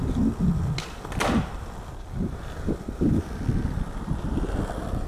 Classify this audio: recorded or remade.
recorded